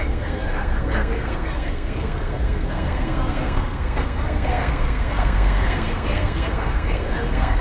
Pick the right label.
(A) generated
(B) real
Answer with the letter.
A